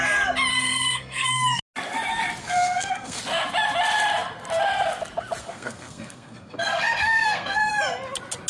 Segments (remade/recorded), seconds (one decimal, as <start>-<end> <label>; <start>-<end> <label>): 0.0-0.5 recorded; 0.5-1.6 remade; 1.6-2.4 recorded; 2.4-3.2 remade; 3.2-5.4 recorded; 5.4-7.7 remade; 7.7-8.5 recorded